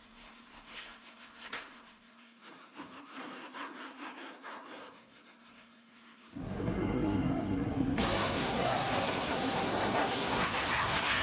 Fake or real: fake